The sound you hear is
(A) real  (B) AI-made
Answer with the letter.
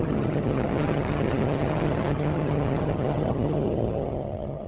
B